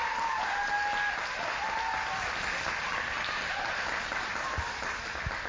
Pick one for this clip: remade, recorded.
recorded